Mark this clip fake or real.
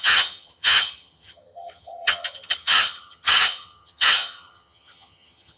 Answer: fake